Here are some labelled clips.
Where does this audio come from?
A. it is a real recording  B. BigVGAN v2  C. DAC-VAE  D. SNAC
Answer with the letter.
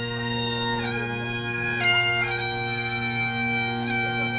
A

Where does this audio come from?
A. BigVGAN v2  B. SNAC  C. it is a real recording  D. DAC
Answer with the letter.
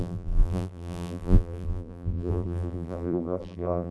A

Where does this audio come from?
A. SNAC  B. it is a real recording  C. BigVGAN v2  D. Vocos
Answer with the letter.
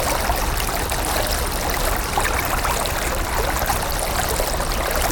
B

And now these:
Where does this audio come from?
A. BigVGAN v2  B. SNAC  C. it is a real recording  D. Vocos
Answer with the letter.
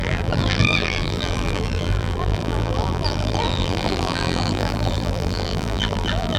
A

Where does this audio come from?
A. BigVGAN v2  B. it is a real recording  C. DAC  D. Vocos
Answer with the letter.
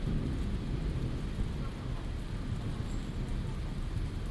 B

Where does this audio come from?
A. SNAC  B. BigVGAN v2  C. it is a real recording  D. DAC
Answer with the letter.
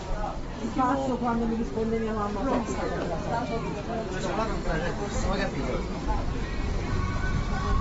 C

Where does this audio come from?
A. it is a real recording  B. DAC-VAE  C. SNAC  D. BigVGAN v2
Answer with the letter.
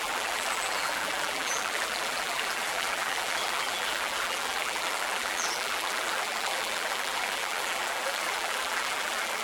D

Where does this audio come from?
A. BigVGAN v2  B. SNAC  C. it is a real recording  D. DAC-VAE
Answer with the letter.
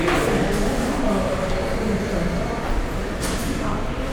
A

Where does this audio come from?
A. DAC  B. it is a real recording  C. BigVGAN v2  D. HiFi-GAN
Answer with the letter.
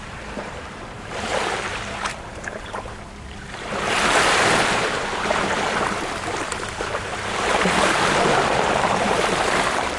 C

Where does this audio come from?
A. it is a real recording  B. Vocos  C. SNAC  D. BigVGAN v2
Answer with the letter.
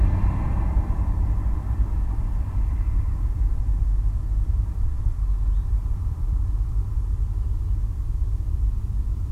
D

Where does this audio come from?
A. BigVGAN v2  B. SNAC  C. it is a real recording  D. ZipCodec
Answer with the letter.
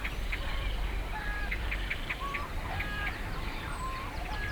A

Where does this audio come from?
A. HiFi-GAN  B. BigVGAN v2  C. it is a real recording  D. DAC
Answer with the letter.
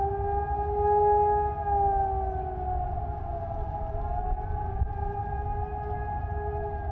C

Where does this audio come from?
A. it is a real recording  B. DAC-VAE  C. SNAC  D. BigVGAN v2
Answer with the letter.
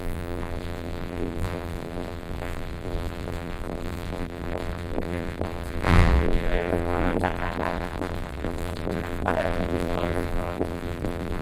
D